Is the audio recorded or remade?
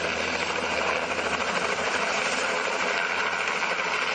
remade